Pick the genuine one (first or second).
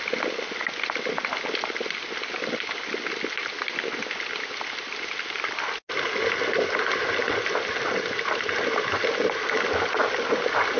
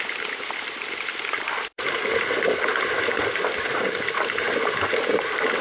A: first